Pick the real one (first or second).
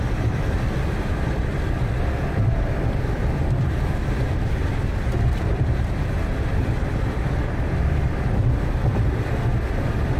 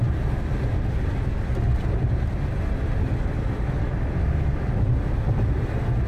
second